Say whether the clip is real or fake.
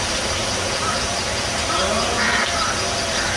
real